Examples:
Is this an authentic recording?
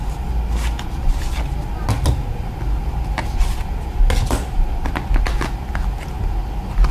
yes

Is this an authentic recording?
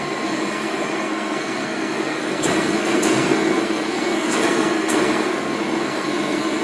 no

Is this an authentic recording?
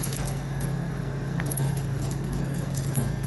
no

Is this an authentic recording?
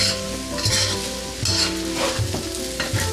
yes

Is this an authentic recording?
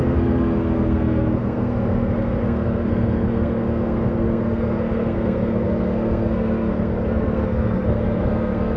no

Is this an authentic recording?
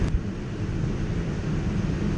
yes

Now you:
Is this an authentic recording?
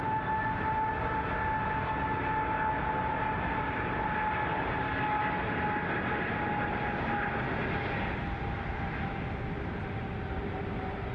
yes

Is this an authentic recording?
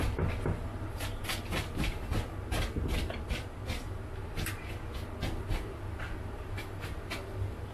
yes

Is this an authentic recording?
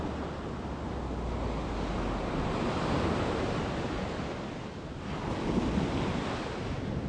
yes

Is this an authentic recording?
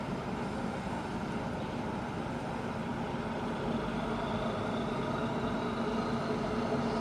yes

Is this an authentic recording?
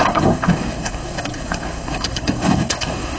no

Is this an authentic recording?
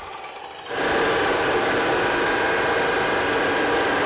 yes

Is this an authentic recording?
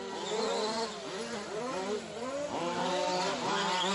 yes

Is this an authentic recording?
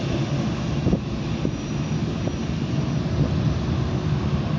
yes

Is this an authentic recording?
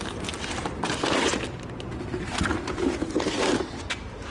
yes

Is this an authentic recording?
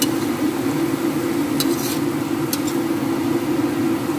yes